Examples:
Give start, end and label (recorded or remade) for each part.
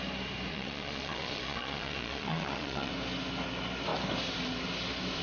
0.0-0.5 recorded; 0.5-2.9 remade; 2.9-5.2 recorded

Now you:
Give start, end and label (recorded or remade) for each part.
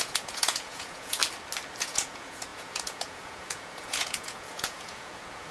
0.0-1.2 remade; 1.2-1.8 recorded; 1.8-5.5 remade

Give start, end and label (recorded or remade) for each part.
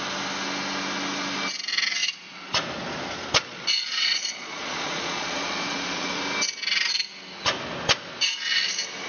0.0-2.0 recorded; 2.0-2.6 remade; 2.6-3.5 recorded; 3.5-6.2 remade; 6.2-9.1 recorded